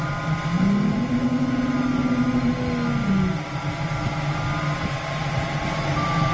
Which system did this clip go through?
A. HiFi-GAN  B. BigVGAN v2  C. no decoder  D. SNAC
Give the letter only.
C